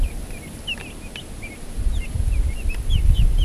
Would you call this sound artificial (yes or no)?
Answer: no